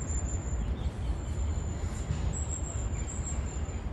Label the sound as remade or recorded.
remade